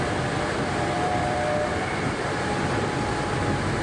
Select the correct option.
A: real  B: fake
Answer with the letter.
B